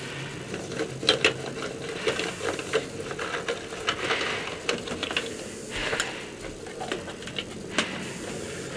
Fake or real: real